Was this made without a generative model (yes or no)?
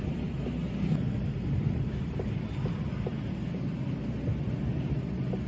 yes